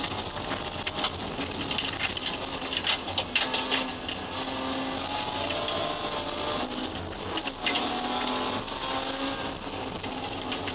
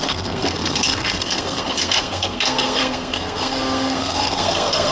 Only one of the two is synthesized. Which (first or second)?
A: second